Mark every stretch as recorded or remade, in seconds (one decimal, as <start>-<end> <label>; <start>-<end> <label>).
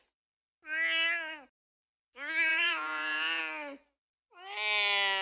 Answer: 0.0-2.5 recorded; 2.5-3.4 remade; 3.4-5.2 recorded